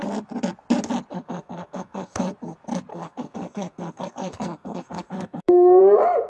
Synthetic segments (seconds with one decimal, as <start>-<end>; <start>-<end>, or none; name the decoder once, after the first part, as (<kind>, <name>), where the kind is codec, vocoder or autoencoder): 1.1-2.2 (codec, SNAC); 2.9-5.8